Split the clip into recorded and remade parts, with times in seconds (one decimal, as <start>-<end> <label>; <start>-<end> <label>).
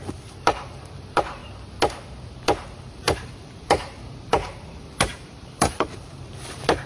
0.0-1.4 remade; 1.4-2.9 recorded; 2.9-6.9 remade